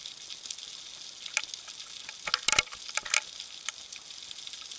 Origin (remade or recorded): recorded